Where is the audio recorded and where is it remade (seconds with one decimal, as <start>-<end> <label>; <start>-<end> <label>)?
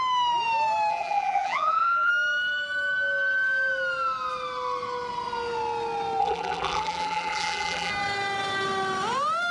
0.0-0.9 recorded; 0.9-2.1 remade; 2.1-6.2 recorded; 6.2-7.9 remade; 7.9-9.5 recorded